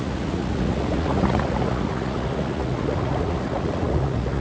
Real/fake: fake